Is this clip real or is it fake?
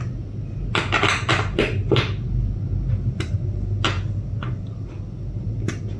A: real